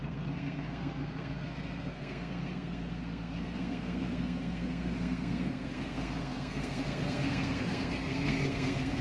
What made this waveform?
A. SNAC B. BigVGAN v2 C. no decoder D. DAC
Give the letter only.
A